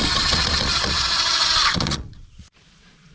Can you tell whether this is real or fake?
fake